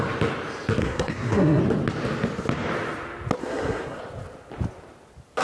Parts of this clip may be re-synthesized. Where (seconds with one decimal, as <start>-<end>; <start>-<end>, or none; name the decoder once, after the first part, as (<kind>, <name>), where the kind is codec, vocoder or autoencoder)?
0.8-1.6 (codec, SNAC); 3.4-4.0